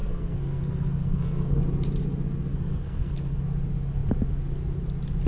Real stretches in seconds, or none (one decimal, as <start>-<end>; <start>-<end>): 1.6-2.5; 3.4-5.3